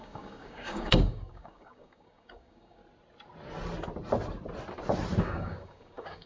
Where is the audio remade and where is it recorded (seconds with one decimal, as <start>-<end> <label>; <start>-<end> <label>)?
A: 0.0-2.8 remade; 2.8-5.2 recorded; 5.2-6.3 remade